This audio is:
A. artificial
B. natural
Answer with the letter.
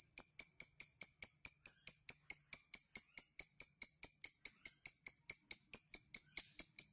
B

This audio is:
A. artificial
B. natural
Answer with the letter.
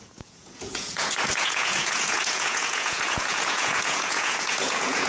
A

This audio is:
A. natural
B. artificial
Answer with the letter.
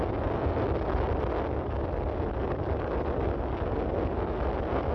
A